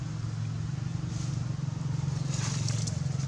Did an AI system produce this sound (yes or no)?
no